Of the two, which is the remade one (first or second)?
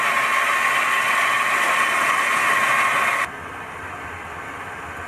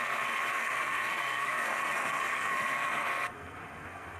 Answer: second